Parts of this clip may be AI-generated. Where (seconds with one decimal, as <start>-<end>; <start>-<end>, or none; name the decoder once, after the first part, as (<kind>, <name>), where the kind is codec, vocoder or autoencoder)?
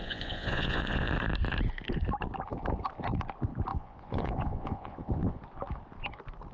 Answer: 0.0-1.1 (vocoder, Vocos); 3.7-5.4